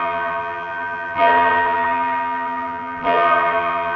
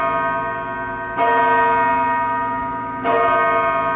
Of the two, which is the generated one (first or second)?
first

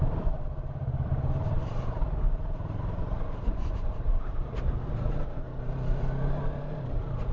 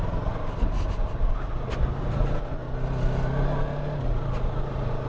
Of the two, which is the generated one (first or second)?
first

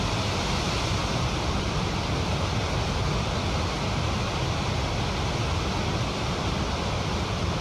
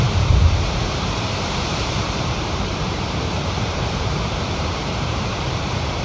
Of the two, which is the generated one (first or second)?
second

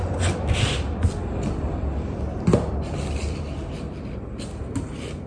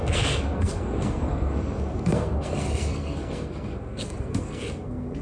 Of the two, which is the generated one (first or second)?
second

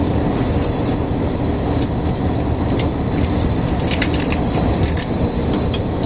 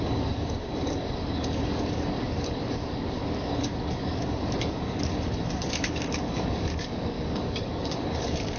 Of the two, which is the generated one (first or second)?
second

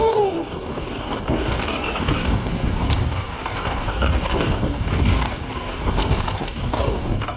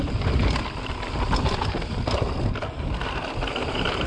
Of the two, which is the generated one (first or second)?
first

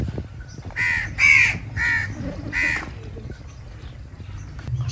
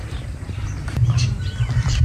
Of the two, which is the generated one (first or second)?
second